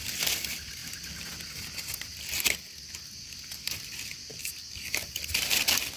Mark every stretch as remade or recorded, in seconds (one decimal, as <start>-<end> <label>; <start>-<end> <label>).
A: 0.0-4.6 recorded; 4.6-5.2 remade; 5.2-6.0 recorded